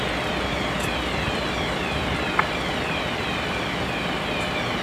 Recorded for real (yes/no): yes